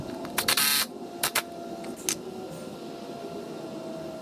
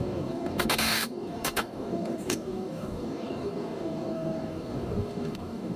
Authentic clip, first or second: first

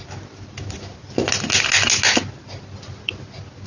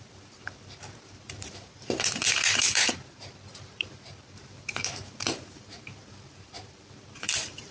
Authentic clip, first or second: first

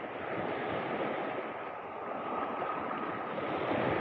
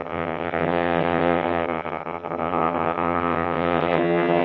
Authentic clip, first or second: first